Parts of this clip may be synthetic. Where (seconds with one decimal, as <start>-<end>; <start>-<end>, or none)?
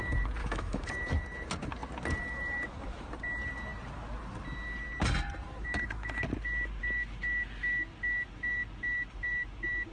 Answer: 0.4-0.9